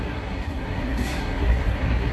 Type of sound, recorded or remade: remade